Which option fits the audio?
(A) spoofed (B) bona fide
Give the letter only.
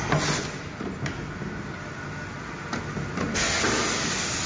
B